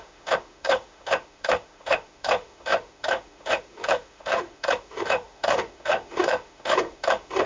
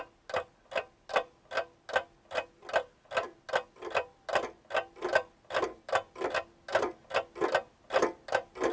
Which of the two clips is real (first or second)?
second